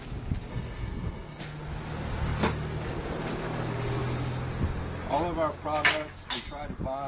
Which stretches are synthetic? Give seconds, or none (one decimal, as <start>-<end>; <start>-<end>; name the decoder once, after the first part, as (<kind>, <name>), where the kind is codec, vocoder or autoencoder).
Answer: 0.5-1.4 (codec, SNAC)